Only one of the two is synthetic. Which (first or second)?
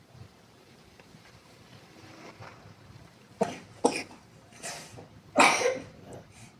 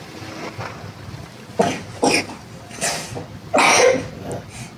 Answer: first